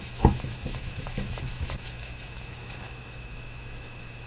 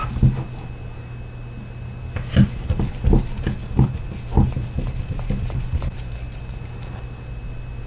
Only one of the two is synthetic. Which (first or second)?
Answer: first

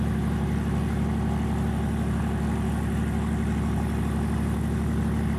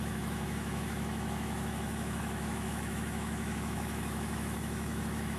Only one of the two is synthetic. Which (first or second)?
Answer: second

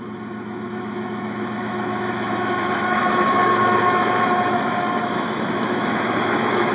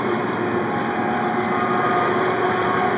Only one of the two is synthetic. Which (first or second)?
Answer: first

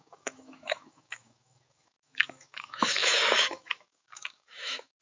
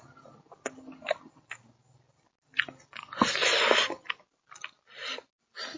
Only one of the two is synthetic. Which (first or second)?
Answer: first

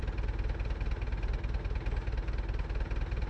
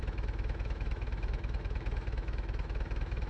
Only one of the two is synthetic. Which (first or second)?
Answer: second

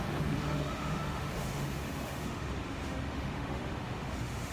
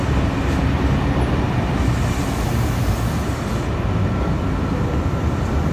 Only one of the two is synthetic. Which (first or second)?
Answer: first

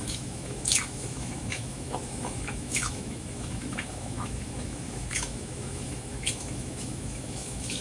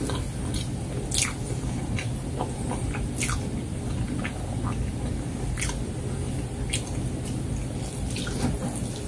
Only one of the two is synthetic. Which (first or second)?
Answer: first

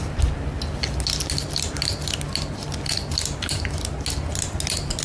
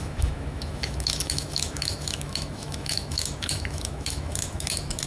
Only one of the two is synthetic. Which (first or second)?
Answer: second